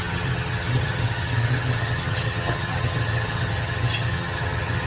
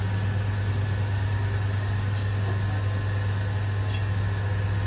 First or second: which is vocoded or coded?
first